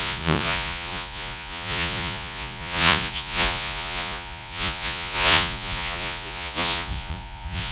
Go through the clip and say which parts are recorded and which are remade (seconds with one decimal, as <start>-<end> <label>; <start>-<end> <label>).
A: 0.0-7.7 remade